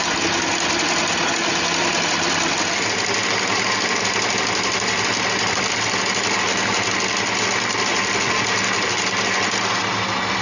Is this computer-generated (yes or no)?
no